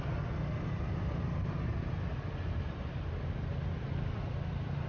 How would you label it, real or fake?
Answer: real